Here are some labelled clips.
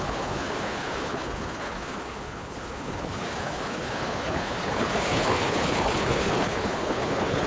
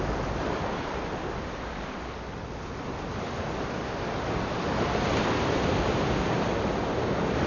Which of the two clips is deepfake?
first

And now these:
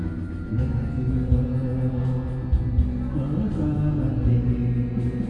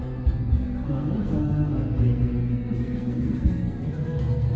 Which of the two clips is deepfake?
second